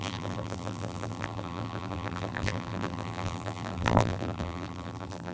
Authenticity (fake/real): fake